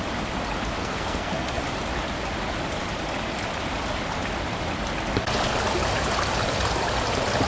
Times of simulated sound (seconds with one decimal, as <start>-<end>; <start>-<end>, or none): 0.8-1.6